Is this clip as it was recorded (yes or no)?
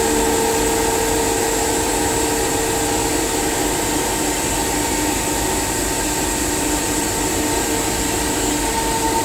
yes